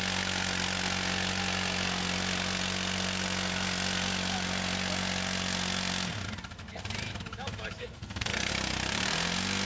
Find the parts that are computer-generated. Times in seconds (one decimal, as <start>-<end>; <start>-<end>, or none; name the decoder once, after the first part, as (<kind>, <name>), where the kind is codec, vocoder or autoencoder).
7.8-8.5 (codec, SNAC)